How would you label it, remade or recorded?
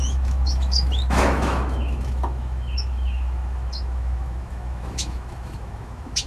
remade